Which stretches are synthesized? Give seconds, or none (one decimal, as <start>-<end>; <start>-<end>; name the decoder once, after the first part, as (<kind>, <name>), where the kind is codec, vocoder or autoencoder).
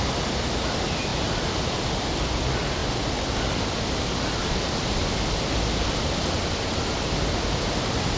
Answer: none